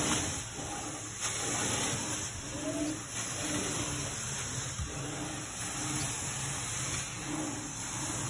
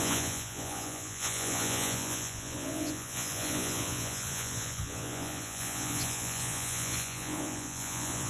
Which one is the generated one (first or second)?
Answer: second